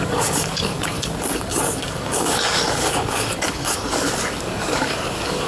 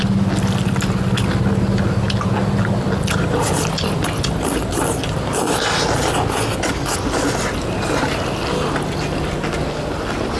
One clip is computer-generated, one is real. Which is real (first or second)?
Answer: second